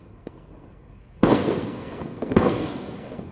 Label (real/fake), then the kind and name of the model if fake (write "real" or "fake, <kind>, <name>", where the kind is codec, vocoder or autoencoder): fake, codec, SNAC